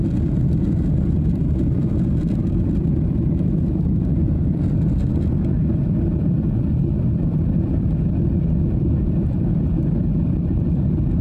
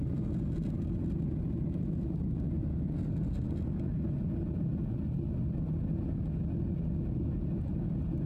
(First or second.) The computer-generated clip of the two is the first